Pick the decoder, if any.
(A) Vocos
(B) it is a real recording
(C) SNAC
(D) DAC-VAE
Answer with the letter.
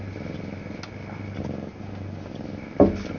B